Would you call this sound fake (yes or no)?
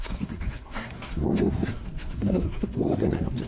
yes